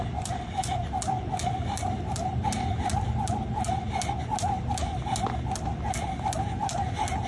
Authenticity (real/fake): real